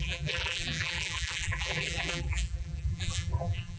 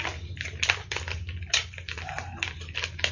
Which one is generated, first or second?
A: first